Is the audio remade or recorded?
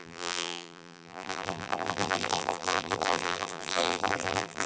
remade